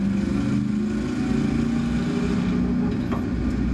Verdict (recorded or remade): recorded